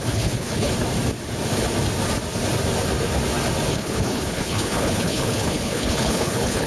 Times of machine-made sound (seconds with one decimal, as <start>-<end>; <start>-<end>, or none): 0.0-0.7; 3.7-6.7